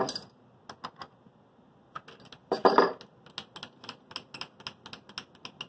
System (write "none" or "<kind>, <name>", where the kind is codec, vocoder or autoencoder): none